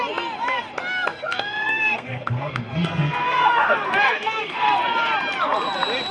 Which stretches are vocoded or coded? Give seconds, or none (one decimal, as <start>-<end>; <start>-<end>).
1.1-4.8